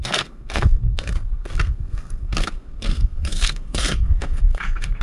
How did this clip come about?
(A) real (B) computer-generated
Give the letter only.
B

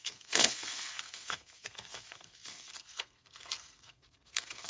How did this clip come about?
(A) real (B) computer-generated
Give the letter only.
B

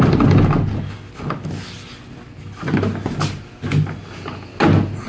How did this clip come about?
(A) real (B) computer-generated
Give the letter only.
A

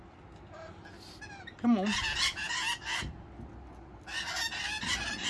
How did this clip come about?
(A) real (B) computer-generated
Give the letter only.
A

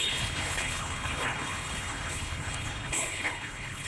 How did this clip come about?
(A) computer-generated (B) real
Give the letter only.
A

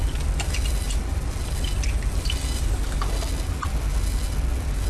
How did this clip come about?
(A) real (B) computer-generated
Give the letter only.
A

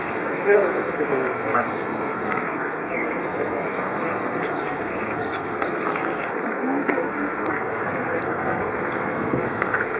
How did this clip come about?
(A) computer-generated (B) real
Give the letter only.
A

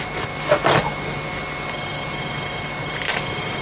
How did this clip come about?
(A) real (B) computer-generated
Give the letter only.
A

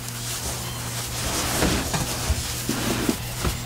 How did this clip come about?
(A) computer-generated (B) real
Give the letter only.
B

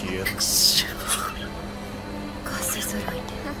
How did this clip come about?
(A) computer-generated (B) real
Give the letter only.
B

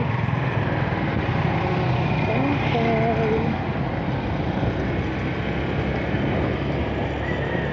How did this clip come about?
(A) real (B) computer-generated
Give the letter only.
A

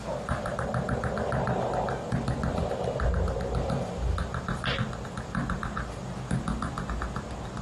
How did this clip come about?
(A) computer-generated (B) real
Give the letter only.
B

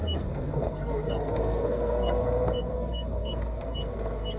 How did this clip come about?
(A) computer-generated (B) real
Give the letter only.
A